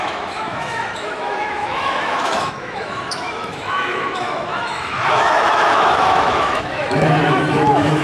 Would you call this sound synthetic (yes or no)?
yes